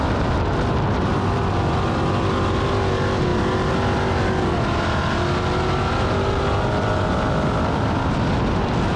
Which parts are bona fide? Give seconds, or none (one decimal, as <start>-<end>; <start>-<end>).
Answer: 0.0-9.0